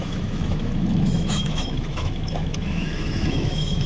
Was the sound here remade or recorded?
remade